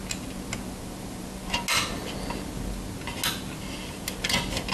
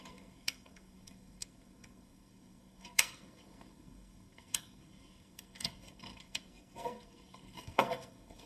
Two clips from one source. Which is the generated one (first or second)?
second